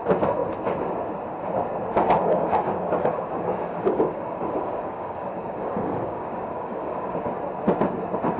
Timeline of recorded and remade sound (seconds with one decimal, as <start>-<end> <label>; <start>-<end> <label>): 0.0-2.2 recorded; 2.2-7.2 remade; 7.2-8.4 recorded